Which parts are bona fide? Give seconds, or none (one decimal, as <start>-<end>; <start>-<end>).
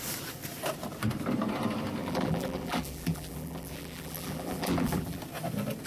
0.0-2.0; 5.2-5.9